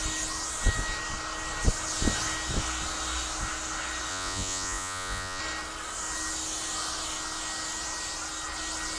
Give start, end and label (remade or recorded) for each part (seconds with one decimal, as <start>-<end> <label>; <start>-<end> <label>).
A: 0.0-4.1 recorded; 4.1-5.4 remade; 5.4-9.0 recorded